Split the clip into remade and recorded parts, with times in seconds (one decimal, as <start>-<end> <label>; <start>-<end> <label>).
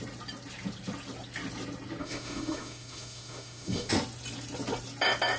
0.0-2.0 recorded; 2.0-3.9 remade; 3.9-5.4 recorded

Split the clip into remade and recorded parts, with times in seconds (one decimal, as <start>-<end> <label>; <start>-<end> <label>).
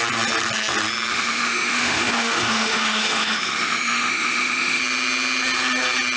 0.0-1.1 recorded; 1.1-4.8 remade; 4.8-6.2 recorded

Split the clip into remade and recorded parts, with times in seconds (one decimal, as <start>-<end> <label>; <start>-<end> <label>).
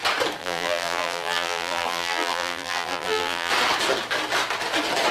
0.0-0.4 recorded; 0.4-3.5 remade; 3.5-5.1 recorded